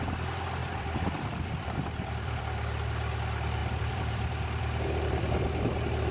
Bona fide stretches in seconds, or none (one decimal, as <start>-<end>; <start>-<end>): 0.0-0.6; 2.4-3.6; 5.0-6.1